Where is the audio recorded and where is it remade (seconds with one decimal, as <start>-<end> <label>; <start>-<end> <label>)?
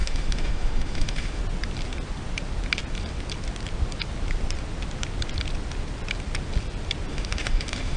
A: 0.0-1.4 remade; 1.4-7.1 recorded; 7.1-8.0 remade